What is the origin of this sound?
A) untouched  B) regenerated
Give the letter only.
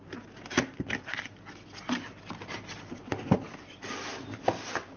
A